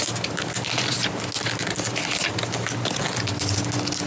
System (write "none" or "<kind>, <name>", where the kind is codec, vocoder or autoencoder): none